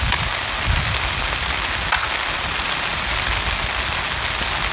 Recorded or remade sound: recorded